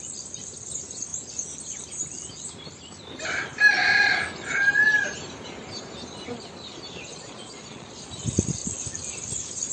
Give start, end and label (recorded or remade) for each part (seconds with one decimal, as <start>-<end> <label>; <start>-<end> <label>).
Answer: 0.0-7.1 recorded; 7.1-7.9 remade; 7.9-9.7 recorded